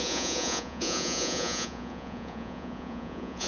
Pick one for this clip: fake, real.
fake